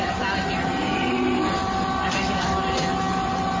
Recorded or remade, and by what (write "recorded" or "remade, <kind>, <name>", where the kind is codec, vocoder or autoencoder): recorded